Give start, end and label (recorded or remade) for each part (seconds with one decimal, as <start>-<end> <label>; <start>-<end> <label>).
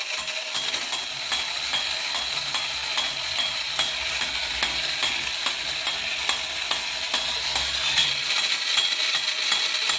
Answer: 0.0-10.0 recorded